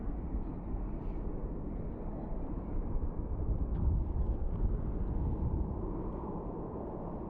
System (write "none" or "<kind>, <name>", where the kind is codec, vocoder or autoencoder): none